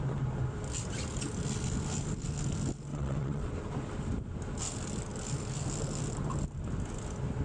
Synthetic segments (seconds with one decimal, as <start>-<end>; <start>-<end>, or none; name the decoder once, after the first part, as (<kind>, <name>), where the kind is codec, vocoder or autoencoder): 2.9-3.5 (vocoder, WaveNeXt)